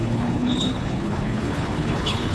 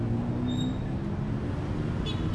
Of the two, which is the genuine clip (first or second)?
second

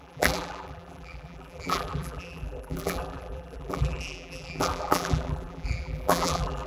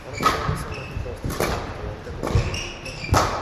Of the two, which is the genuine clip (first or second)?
second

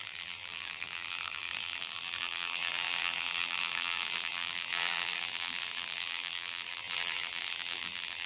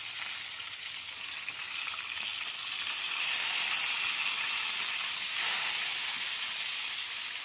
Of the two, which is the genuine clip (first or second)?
second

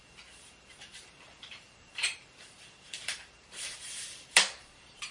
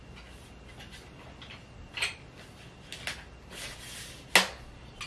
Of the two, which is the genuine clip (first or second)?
second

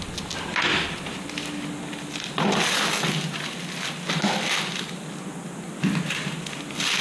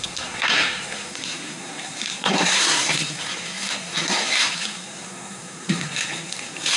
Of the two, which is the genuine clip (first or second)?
first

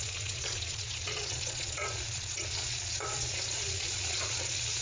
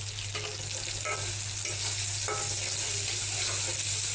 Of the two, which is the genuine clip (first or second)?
second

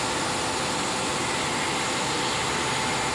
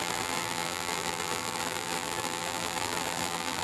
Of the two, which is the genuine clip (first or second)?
first